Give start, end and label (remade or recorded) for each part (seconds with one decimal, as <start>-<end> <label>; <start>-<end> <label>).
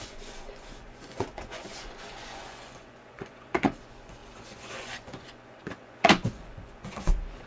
0.0-7.5 remade